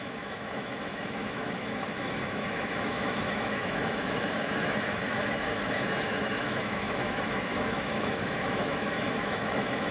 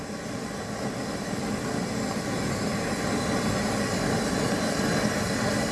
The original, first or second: second